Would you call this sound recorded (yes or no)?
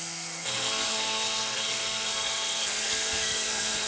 no